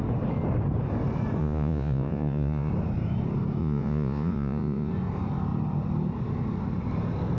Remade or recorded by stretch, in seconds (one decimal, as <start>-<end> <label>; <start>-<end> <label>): 0.0-1.4 recorded; 1.4-2.7 remade; 2.7-3.6 recorded; 3.6-4.9 remade; 4.9-7.4 recorded